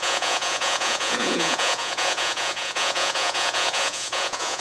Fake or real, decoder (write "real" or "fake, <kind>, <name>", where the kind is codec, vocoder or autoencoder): fake, vocoder, Vocos